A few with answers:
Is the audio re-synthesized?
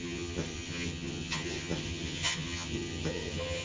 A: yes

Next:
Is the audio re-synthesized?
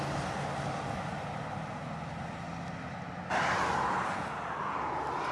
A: no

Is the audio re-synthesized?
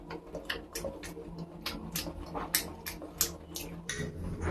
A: no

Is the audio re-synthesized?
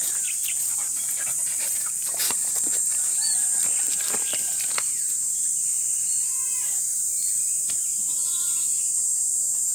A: yes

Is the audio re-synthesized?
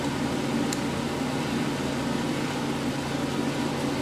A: no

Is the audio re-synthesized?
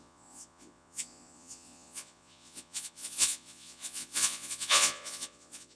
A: yes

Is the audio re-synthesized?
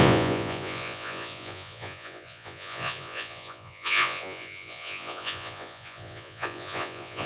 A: yes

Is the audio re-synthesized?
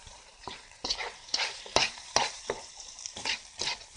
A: yes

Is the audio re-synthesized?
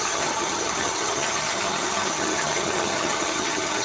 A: yes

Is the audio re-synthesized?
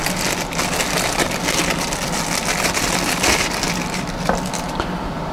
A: no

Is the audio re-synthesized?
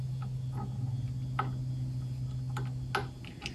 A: no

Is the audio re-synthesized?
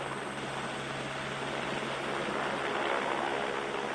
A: no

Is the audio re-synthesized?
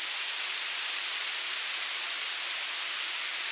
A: no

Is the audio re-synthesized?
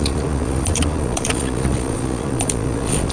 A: yes